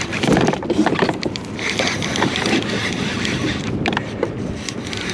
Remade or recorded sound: remade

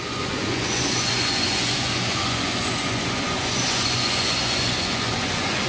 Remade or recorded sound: remade